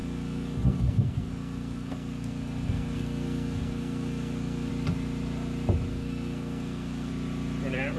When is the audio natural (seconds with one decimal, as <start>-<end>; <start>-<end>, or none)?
4.7-5.9; 7.1-8.0